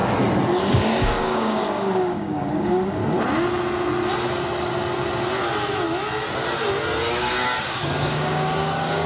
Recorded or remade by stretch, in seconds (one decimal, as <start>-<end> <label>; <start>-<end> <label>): 0.0-0.6 recorded; 0.6-3.0 remade; 3.0-7.1 recorded; 7.1-9.1 remade